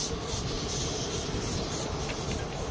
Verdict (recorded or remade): recorded